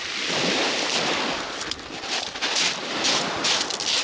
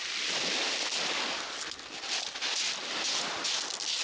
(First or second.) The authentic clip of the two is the second